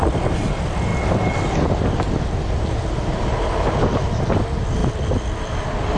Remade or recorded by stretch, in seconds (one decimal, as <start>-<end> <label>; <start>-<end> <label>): 0.0-6.0 recorded